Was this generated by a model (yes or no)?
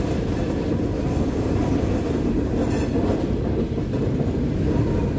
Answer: no